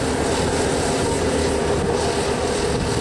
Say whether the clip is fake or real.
real